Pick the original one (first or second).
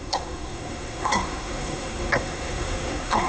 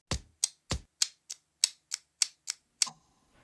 second